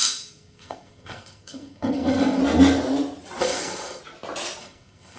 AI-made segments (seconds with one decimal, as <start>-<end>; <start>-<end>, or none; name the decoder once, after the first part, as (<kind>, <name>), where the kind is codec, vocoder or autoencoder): 0.0-2.4 (codec, SNAC); 3.4-4.0; 4.6-5.2